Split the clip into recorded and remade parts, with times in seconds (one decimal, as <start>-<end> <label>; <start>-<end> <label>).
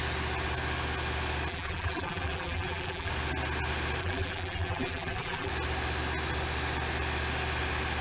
0.0-1.5 recorded; 1.5-3.1 remade; 3.1-4.0 recorded; 4.0-5.5 remade; 5.5-8.0 recorded